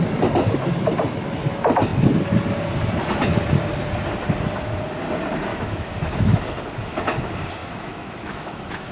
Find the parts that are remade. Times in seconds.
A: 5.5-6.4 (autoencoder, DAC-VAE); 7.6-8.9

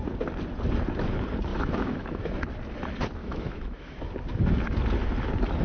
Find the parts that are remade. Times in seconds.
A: 1.5-2.3 (autoencoder, DAC-VAE); 3.2-4.0

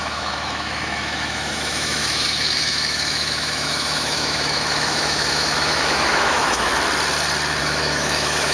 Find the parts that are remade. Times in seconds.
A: 0.0-6.7 (autoencoder, DAC-VAE); 7.6-8.5

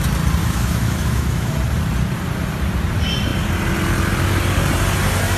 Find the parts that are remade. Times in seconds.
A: 0.4-1.5 (autoencoder, DAC-VAE)

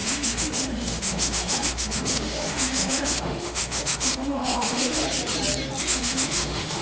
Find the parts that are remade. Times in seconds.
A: 0.0-5.0 (autoencoder, DAC-VAE); 5.8-6.8

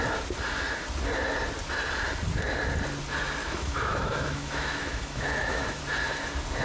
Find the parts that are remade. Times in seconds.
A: 3.4-5.8 (autoencoder, DAC-VAE)

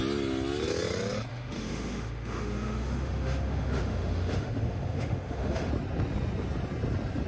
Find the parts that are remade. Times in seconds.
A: 1.3-5.7 (autoencoder, DAC-VAE)